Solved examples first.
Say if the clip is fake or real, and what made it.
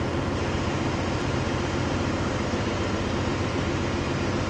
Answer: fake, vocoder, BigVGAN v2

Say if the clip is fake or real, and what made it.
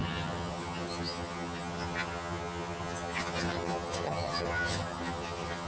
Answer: fake, vocoder, HiFi-GAN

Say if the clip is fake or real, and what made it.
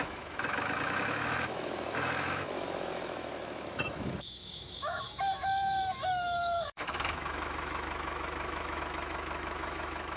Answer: fake, autoencoder, DAC-VAE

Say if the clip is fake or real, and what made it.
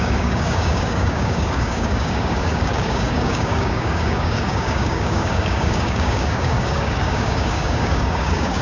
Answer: fake, codec, DAC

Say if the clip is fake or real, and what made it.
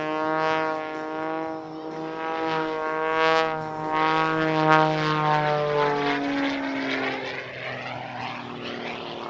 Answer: real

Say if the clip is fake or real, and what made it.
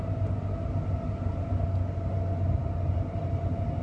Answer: real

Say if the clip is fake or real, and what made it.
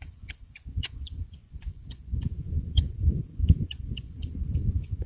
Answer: fake, vocoder, Vocos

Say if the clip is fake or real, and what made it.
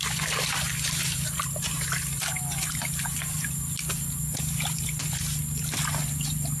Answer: real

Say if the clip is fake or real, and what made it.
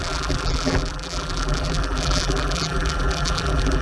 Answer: fake, vocoder, BigVGAN v2